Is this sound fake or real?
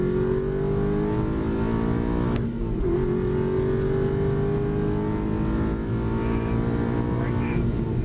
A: real